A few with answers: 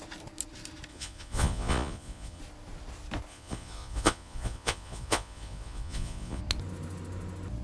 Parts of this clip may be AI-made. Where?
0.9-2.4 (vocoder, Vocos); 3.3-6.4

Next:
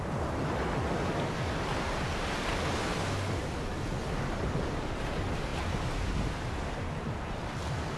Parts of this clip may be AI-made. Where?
none